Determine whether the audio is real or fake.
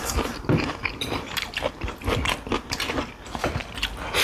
real